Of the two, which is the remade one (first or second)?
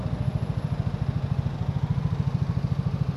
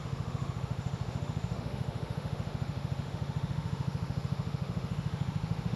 second